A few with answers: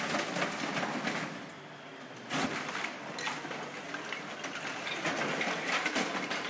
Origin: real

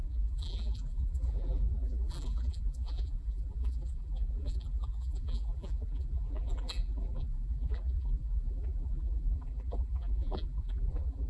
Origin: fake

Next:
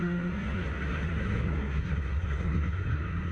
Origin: fake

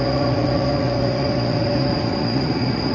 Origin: fake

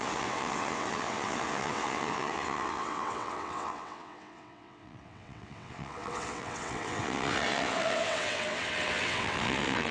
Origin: fake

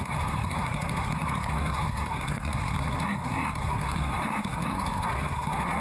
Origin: fake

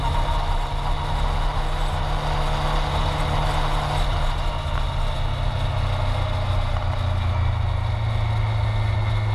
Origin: real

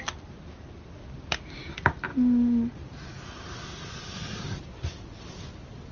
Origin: real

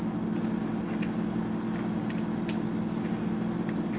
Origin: real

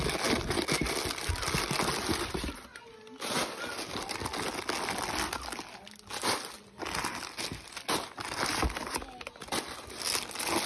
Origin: real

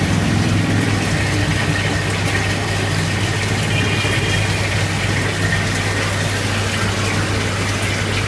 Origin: real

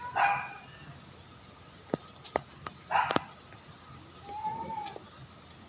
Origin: real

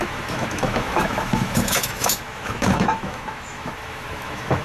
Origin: fake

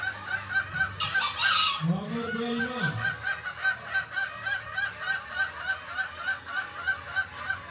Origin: real